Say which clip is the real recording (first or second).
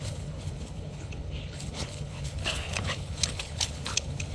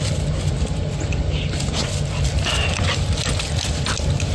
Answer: second